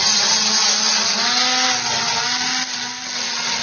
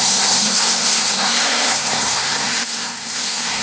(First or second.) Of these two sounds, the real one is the first